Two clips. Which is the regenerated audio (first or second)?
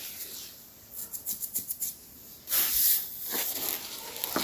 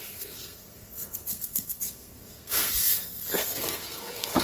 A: second